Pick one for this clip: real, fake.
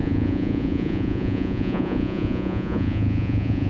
fake